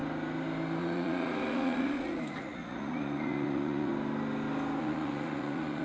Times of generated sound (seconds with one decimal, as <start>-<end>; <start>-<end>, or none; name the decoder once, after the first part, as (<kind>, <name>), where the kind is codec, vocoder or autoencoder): 0.8-3.9 (vocoder, Vocos); 4.8-5.8